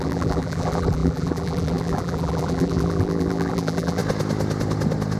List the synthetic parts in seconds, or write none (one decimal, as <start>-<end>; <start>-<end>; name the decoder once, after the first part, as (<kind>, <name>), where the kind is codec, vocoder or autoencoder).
0.0-4.0 (vocoder, BigVGAN v2)